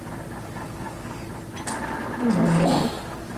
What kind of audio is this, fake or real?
real